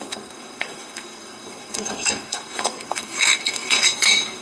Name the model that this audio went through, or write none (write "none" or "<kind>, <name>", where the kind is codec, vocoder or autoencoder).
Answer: codec, SNAC